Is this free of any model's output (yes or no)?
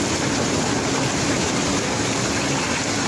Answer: yes